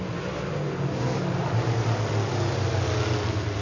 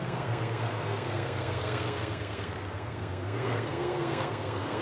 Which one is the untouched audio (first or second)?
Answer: first